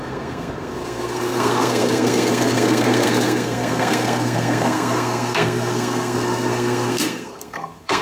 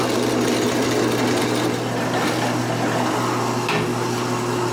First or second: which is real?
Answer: second